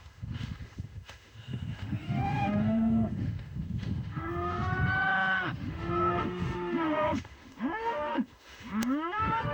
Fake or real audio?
fake